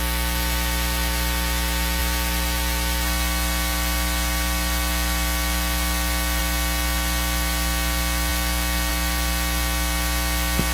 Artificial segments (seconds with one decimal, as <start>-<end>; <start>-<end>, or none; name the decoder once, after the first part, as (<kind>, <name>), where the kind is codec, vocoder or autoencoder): none